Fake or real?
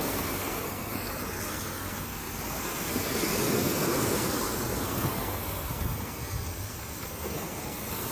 fake